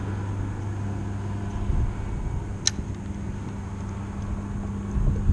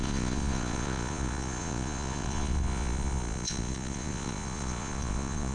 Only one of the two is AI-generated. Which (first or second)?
second